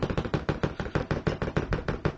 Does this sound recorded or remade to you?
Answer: recorded